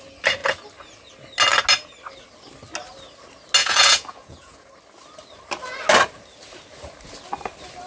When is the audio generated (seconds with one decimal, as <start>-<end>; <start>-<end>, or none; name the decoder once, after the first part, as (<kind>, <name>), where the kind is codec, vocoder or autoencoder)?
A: 3.6-4.7 (vocoder, Vocos)